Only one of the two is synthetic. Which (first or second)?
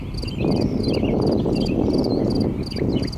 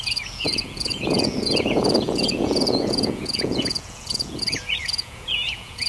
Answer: second